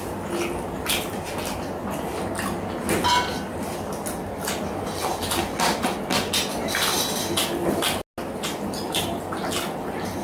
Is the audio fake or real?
real